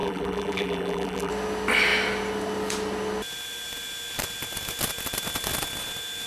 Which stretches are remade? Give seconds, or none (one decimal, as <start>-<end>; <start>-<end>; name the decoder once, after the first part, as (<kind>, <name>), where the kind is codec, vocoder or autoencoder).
0.0-1.3 (vocoder, BigVGAN v2)

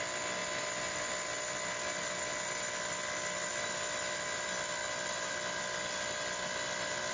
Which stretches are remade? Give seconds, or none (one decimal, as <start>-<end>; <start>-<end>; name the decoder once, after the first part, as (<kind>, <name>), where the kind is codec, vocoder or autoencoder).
none